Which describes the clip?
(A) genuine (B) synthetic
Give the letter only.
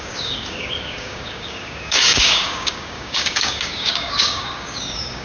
B